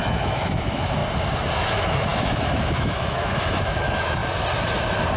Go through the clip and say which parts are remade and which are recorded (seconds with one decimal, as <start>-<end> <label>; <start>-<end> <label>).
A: 0.0-1.0 remade; 1.0-1.6 recorded; 1.6-4.2 remade; 4.2-5.2 recorded